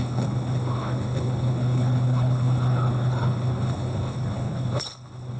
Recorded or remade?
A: remade